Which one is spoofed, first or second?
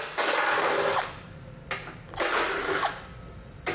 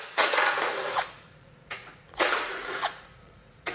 second